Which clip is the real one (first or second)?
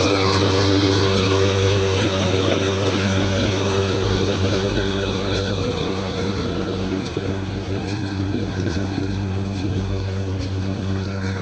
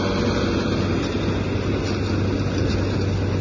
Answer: second